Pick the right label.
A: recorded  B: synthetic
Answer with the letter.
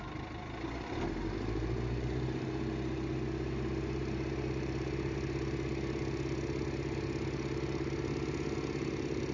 A